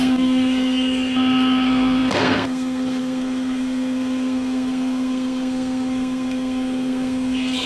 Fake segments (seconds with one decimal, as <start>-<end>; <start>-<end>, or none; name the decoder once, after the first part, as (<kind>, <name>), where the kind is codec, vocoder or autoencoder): 0.0-7.7 (codec, SNAC)

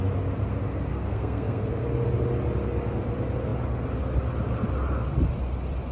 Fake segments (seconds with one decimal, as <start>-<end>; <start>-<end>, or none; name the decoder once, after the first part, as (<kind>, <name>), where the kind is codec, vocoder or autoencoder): 0.9-1.6 (codec, SNAC)

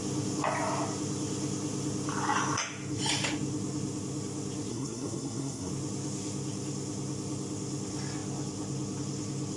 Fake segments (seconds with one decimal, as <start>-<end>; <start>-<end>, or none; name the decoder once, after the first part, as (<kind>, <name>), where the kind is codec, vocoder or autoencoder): 4.7-5.7 (codec, SNAC)

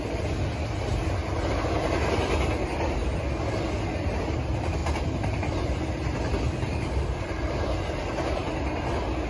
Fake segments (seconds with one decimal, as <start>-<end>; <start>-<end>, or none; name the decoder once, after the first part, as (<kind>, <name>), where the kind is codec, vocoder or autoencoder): none

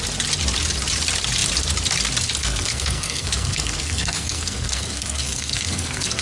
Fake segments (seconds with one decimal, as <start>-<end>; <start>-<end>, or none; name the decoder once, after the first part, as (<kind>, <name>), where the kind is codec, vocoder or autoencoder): 2.4-6.2 (codec, SNAC)